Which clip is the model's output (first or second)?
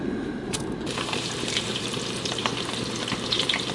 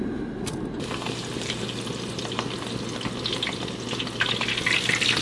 first